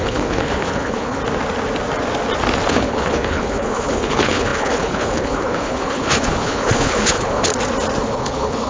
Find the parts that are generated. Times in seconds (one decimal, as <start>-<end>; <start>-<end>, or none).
0.0-1.2; 2.7-7.5; 8.0-8.7